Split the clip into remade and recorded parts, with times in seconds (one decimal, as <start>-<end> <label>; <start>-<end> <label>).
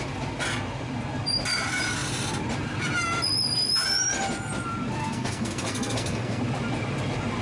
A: 0.0-5.0 recorded; 5.0-6.4 remade; 6.4-7.4 recorded